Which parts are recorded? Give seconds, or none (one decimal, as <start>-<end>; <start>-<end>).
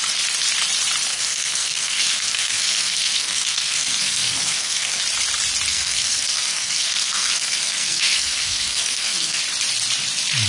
0.0-1.1; 5.0-5.7; 9.4-10.5